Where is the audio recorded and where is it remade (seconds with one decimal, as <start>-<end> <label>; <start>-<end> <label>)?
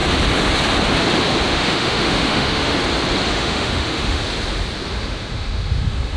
0.0-1.5 recorded; 1.5-2.7 remade; 2.7-3.3 recorded; 3.3-4.2 remade; 4.2-4.9 recorded; 4.9-6.2 remade